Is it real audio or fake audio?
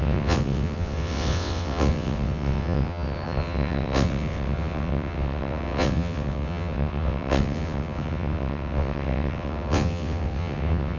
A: fake